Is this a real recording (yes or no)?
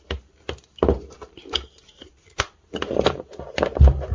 yes